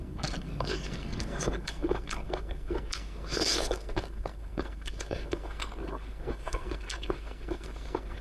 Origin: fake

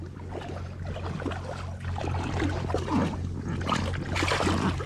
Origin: real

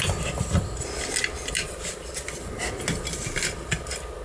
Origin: real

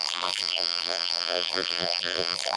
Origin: fake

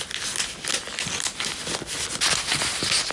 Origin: real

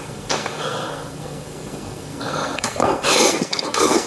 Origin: fake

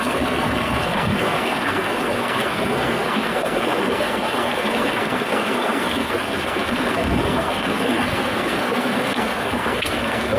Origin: fake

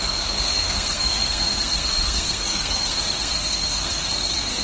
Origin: fake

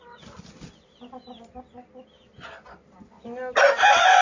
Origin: real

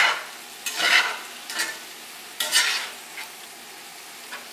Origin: real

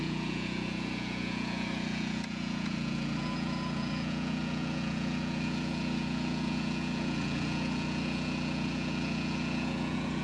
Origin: fake